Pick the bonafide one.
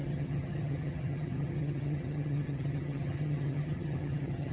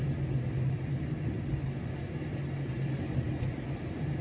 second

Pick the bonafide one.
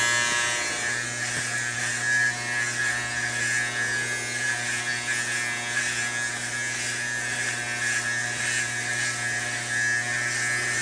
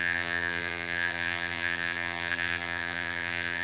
first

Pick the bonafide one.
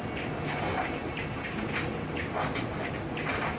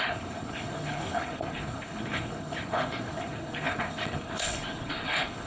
first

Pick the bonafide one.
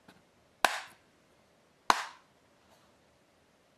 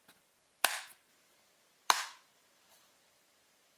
first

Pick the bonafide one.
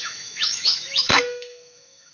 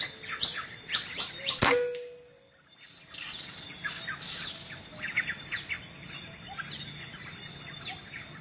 second